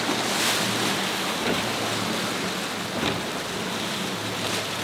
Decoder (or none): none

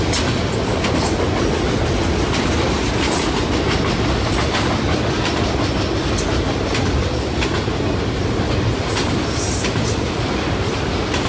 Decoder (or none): none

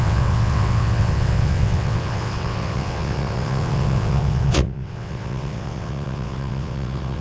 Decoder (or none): vocoder, WaveNeXt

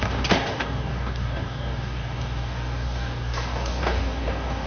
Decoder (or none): codec, DAC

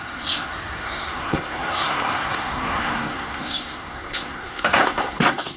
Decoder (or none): codec, SNAC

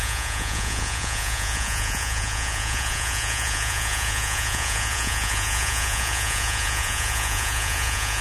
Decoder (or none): vocoder, Vocos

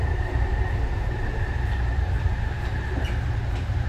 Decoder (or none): vocoder, BigVGAN v2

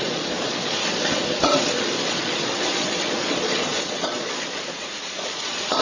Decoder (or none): vocoder, Vocos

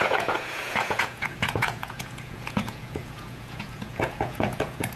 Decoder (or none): vocoder, Vocos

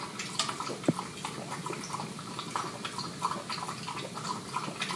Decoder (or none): none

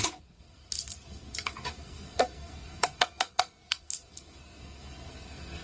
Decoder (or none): codec, SNAC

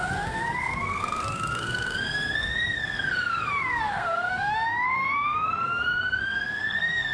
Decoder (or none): codec, SNAC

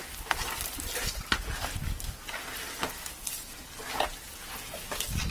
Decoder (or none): none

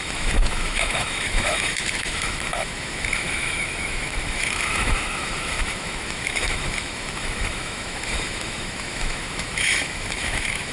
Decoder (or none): autoencoder, DAC-VAE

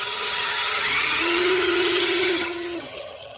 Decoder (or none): vocoder, HiFi-GAN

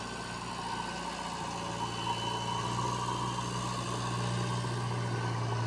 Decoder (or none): none